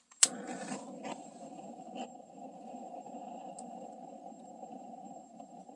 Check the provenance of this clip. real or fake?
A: real